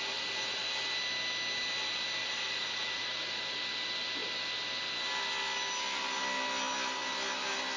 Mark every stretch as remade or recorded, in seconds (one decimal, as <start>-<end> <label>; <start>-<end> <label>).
0.0-2.2 recorded; 2.2-3.4 remade; 3.4-7.8 recorded